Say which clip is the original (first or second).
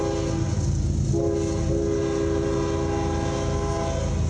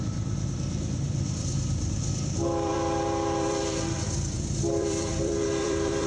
first